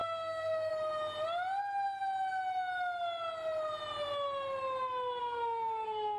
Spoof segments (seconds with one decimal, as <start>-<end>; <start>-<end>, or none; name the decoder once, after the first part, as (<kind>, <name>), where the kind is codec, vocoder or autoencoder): 0.0-0.7 (codec, SNAC); 5.2-6.2